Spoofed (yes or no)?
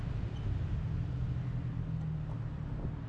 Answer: no